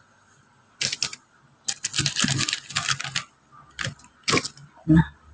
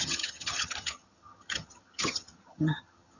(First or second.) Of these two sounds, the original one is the first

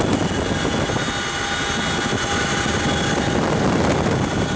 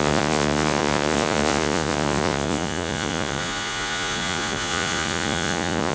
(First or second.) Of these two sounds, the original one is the first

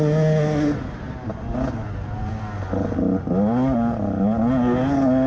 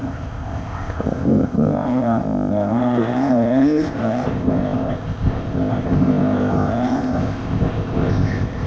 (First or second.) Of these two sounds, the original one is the first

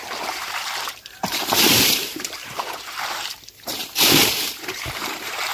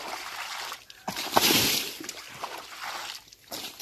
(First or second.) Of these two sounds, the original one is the second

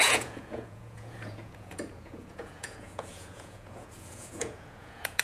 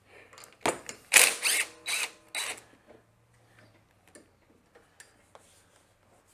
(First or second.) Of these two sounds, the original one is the second